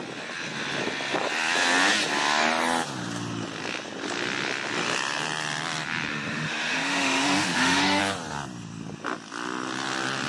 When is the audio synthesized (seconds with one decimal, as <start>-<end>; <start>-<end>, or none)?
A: 6.1-8.0